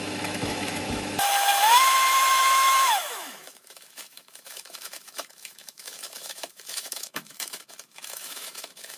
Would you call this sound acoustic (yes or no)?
no